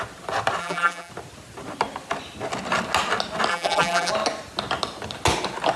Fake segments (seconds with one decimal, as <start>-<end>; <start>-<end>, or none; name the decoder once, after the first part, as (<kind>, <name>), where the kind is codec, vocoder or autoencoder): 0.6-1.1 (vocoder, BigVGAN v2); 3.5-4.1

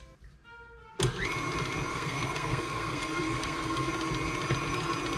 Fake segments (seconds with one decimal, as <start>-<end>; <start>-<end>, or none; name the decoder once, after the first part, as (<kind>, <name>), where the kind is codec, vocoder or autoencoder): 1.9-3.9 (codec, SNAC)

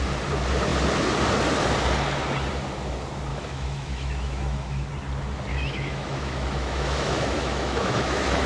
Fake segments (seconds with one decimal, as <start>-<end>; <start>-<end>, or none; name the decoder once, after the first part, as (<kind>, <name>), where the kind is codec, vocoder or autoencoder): 3.3-4.9 (autoencoder, DAC-VAE); 5.5-8.5

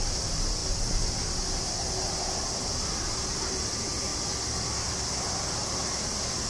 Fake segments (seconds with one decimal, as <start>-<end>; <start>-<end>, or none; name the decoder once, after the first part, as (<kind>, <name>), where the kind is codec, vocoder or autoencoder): none